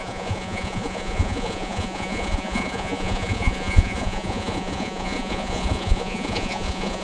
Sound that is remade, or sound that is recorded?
remade